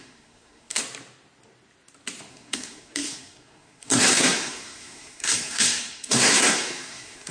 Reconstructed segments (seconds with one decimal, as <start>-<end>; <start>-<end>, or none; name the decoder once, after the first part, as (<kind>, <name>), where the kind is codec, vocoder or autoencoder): 0.0-0.8 (codec, SNAC); 2.3-7.3